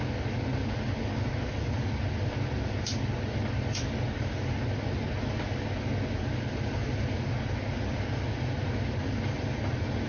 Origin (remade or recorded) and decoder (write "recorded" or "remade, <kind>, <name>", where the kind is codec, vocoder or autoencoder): recorded